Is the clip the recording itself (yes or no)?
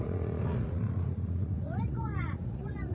no